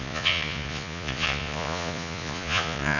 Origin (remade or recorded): remade